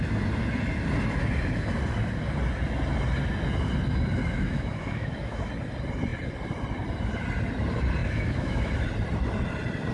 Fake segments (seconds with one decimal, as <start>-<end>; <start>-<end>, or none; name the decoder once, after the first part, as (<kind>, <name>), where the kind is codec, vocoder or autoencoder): 4.2-5.5 (autoencoder, DAC-VAE); 8.0-8.7